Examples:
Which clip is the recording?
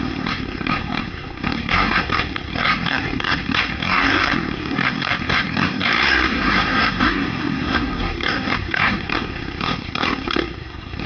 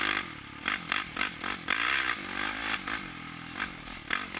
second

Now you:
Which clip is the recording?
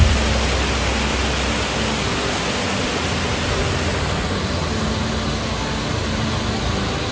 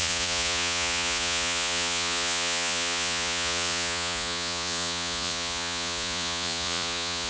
first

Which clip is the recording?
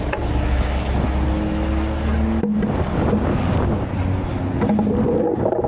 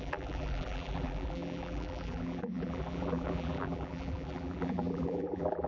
first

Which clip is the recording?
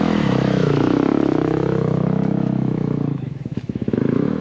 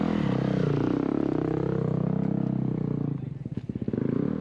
second